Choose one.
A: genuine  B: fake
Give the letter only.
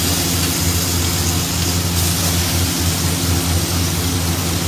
A